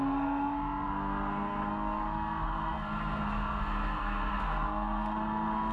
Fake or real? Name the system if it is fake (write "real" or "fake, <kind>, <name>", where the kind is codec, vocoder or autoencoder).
fake, codec, SNAC